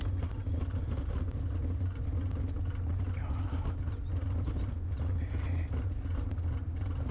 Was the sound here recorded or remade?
recorded